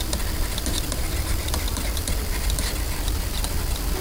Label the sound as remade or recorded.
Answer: remade